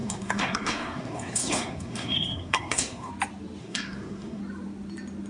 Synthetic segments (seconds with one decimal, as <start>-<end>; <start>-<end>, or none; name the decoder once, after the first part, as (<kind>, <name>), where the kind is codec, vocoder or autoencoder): 0.0-3.1 (codec, SNAC); 3.6-4.4